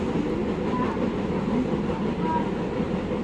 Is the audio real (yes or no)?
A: yes